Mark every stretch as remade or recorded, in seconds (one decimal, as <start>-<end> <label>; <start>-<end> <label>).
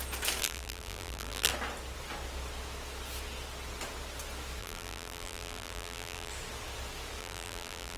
0.0-0.4 recorded; 0.4-1.5 remade; 1.5-4.6 recorded; 4.6-6.3 remade; 6.3-7.2 recorded; 7.2-8.0 remade